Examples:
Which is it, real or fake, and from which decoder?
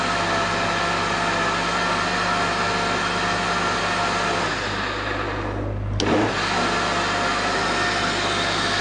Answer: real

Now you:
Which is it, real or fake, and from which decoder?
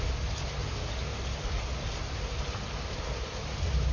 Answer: real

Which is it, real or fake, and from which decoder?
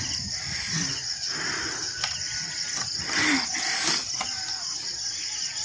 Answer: real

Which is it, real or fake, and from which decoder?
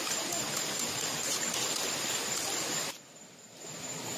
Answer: real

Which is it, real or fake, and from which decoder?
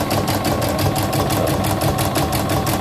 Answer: real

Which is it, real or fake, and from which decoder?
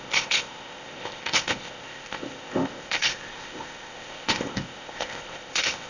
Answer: fake, codec, ZipCodec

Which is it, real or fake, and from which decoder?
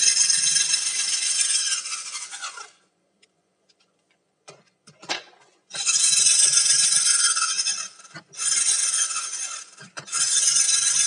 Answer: fake, vocoder, Vocos